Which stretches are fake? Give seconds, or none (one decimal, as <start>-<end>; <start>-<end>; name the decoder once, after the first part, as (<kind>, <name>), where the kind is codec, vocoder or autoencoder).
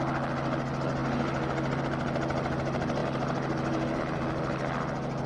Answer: none